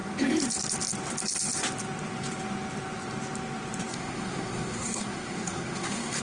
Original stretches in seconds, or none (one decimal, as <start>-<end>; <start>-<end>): 0.0-3.9